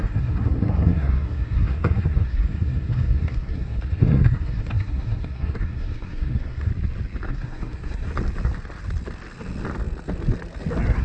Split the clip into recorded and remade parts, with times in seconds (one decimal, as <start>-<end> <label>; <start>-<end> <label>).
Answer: 0.0-6.7 remade; 6.7-7.3 recorded; 7.3-8.1 remade; 8.1-11.0 recorded

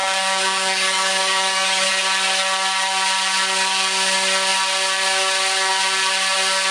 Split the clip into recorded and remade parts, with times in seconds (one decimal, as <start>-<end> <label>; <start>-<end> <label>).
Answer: 0.0-1.9 remade; 1.9-6.7 recorded

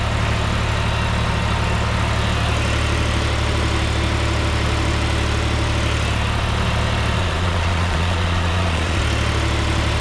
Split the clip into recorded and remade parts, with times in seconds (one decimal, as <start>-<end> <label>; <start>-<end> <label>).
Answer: 0.0-7.2 recorded; 7.2-9.0 remade; 9.0-10.0 recorded

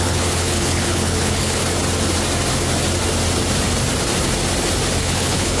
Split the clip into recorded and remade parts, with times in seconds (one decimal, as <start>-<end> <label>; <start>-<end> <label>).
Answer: 0.0-1.6 remade; 1.6-5.0 recorded; 5.0-5.6 remade

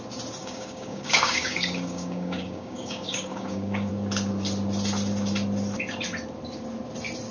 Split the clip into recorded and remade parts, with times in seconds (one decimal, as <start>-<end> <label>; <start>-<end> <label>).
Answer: 0.0-0.4 recorded; 0.4-3.9 remade; 3.9-7.3 recorded

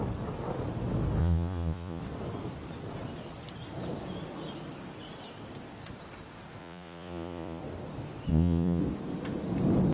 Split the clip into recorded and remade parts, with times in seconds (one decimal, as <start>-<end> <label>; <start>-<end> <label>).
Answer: 0.0-1.2 recorded; 1.2-2.0 remade; 2.0-6.6 recorded; 6.6-7.6 remade; 7.6-8.3 recorded; 8.3-8.8 remade; 8.8-9.9 recorded

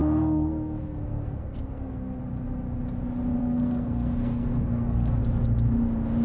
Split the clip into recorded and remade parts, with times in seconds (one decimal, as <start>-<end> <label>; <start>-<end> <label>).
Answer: 0.0-2.2 remade; 2.2-3.4 recorded; 3.4-5.2 remade; 5.2-6.2 recorded

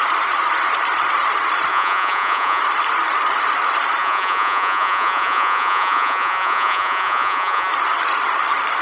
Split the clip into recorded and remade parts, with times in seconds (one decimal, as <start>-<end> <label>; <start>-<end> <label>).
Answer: 0.0-1.7 recorded; 1.7-2.6 remade; 2.6-4.0 recorded; 4.0-7.7 remade; 7.7-8.8 recorded